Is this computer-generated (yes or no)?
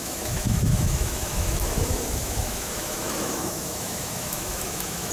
yes